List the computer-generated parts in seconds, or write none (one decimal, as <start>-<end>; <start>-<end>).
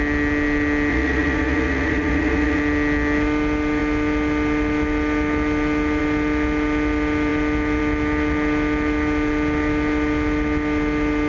0.9-2.6